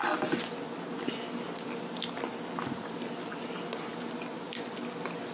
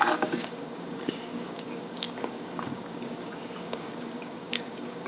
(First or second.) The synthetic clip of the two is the second